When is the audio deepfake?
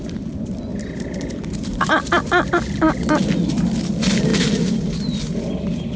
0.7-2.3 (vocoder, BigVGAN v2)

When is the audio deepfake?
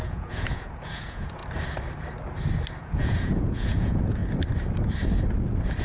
0.0-1.4 (vocoder, Vocos); 2.8-4.2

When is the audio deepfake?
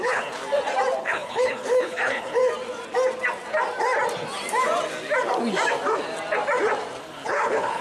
0.0-0.4 (codec, HILCodec); 1.0-2.4; 7.0-7.8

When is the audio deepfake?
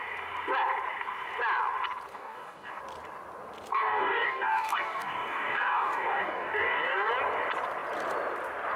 2.1-2.8 (codec, DAC); 3.7-7.1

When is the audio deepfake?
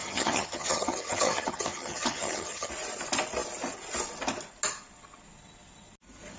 0.0-2.7 (vocoder, HiFi-GAN)